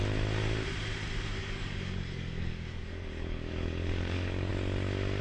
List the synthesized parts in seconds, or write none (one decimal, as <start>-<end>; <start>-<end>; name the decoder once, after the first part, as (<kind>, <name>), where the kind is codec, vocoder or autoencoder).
1.4-4.5 (codec, DAC)